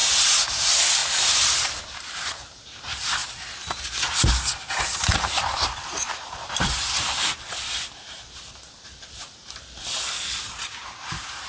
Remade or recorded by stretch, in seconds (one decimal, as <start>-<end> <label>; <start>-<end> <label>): 0.0-0.5 recorded; 0.5-1.0 remade; 1.0-1.6 recorded; 1.6-3.2 remade; 3.2-4.3 recorded; 4.3-11.5 remade

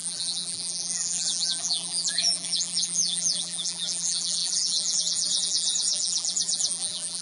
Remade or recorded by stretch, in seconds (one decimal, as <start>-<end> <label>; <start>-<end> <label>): 0.0-7.2 remade

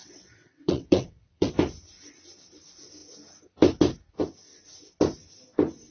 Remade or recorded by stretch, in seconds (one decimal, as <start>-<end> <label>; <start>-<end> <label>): 0.0-1.5 remade; 1.5-5.9 recorded

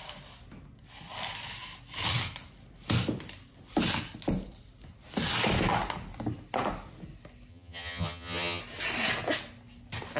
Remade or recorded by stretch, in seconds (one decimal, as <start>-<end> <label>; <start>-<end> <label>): 0.0-7.5 recorded; 7.5-8.6 remade; 8.6-10.2 recorded

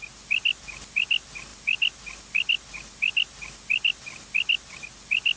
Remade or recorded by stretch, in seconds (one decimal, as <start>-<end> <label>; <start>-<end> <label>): 0.0-5.4 recorded

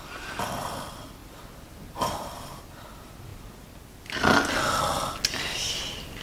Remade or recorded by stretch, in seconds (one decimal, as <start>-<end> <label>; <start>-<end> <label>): 0.0-1.2 recorded; 1.2-2.6 remade; 2.6-6.2 recorded